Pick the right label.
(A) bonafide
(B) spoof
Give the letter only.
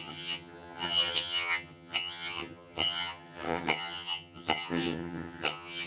B